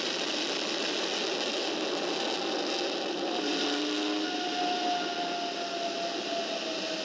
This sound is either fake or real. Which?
real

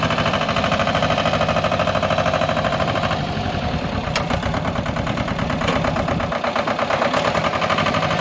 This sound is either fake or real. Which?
fake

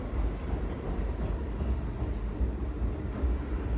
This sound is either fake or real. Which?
real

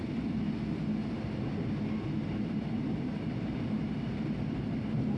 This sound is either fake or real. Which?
real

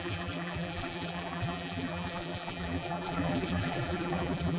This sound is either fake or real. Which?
fake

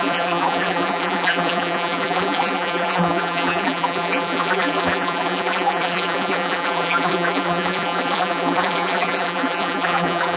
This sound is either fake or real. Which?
fake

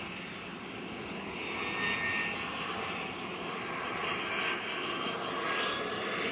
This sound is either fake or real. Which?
real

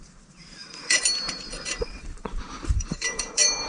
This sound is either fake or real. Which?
fake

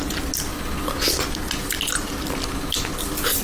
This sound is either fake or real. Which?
real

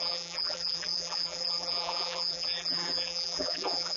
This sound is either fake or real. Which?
fake